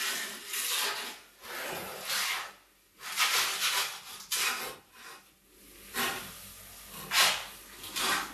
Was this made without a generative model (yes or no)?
yes